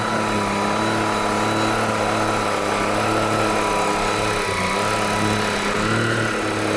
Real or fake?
real